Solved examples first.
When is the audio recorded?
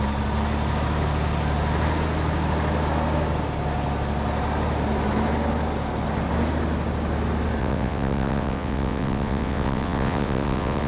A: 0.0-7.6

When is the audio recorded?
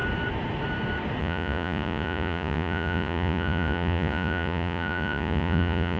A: 0.0-1.2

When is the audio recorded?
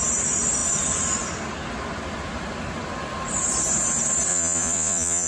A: 0.0-4.3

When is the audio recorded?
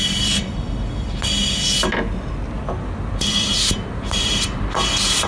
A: 0.0-3.5; 4.6-5.3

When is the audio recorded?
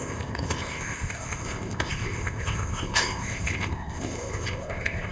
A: none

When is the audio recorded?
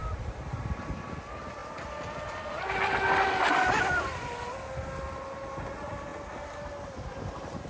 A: 0.0-7.7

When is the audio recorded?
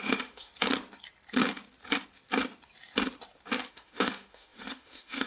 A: 0.5-3.7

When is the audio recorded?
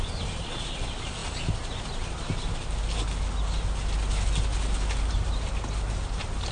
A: 0.0-6.5